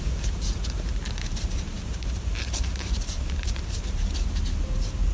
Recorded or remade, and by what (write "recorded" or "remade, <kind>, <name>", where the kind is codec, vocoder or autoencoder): remade, vocoder, BigVGAN v2